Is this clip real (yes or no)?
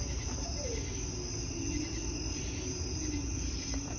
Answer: yes